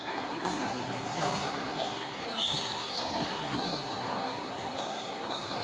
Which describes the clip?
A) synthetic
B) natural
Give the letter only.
A